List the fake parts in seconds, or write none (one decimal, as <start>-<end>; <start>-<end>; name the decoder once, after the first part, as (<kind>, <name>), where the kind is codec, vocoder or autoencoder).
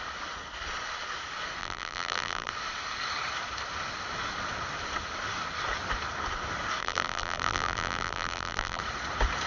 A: 1.6-2.5 (vocoder, BigVGAN v2); 6.8-8.8